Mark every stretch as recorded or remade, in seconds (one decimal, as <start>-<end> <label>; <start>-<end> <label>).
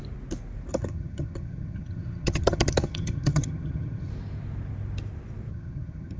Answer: 0.0-0.7 recorded; 0.7-4.1 remade; 4.1-5.5 recorded; 5.5-6.2 remade